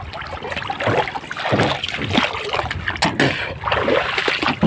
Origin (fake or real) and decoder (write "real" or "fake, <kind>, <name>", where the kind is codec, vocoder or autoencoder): real